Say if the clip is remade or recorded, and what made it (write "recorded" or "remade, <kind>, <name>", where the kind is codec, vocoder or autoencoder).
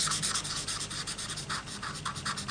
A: recorded